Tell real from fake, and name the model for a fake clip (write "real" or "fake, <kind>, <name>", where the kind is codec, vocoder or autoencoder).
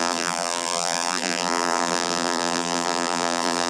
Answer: fake, vocoder, BigVGAN v2